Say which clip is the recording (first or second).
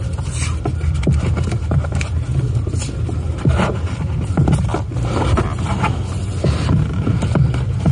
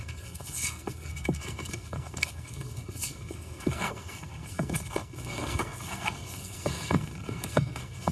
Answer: first